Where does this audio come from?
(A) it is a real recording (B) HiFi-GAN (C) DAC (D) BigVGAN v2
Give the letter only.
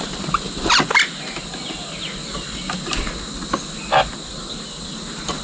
A